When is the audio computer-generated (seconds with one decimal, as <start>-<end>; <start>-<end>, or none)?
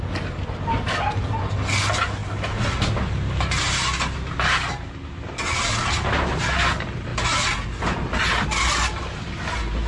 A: none